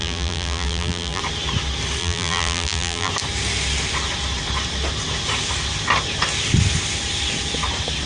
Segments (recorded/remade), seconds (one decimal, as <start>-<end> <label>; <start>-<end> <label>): 0.0-1.2 remade; 1.2-2.0 recorded; 2.0-3.1 remade; 3.1-8.1 recorded